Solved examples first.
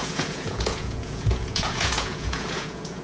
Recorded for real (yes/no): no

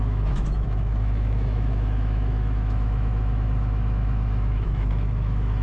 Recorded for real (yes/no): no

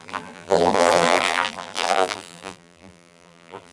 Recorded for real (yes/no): no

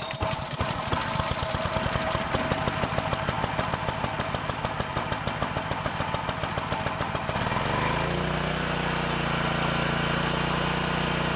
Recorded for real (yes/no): yes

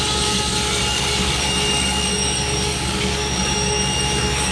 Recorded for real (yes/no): no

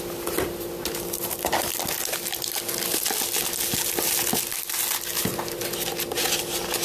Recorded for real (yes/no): yes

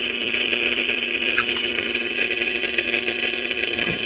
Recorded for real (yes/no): no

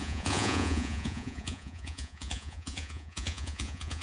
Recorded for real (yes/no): no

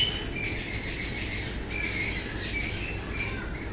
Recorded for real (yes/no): yes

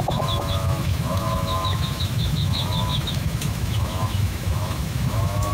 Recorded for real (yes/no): no